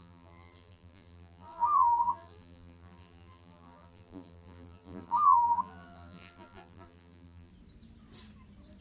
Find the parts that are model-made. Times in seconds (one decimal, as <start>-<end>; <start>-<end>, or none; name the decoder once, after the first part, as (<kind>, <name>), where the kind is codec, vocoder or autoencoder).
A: 0.0-7.5 (vocoder, BigVGAN v2)